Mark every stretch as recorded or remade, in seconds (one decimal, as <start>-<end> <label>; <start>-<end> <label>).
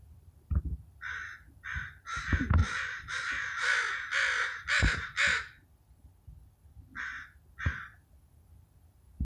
0.0-0.6 remade; 0.6-2.6 recorded; 2.6-7.5 remade; 7.5-9.2 recorded